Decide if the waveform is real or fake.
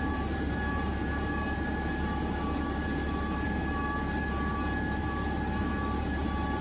fake